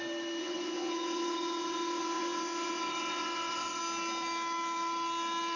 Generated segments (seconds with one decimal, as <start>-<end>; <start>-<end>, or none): 0.4-3.8